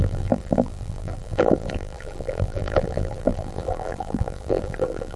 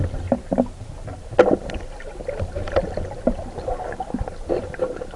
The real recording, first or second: second